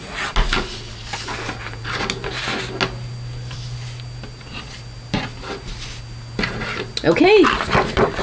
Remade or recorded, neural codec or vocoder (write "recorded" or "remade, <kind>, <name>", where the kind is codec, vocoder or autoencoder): recorded